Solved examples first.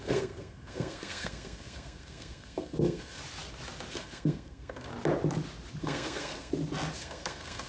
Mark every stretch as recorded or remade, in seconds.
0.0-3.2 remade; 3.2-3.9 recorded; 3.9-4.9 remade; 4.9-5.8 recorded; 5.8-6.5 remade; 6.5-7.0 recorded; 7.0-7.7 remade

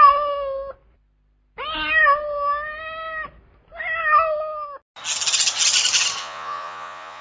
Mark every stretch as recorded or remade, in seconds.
0.0-6.2 recorded; 6.2-7.2 remade

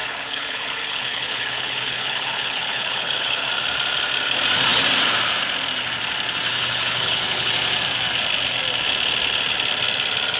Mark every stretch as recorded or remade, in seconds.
0.0-3.5 remade; 3.5-6.5 recorded; 6.5-7.5 remade; 7.5-10.4 recorded

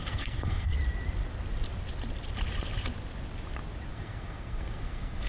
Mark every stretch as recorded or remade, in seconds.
0.0-0.7 remade; 0.7-3.9 recorded; 3.9-5.3 remade

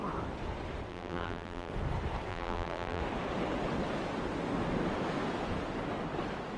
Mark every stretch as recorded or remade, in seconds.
0.0-0.9 recorded; 0.9-1.7 remade; 1.7-2.3 recorded; 2.3-3.0 remade; 3.0-6.6 recorded

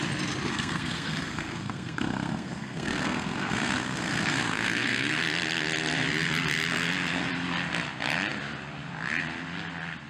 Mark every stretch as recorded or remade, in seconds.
0.0-0.5 recorded; 0.5-5.1 remade; 5.1-10.1 recorded

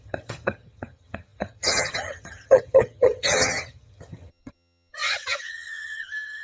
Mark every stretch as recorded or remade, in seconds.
0.0-6.4 remade

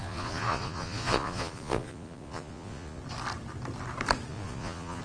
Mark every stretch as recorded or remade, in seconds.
0.0-3.0 remade; 3.0-4.3 recorded; 4.3-5.0 remade